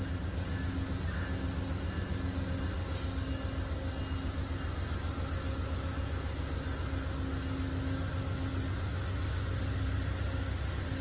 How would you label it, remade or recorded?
recorded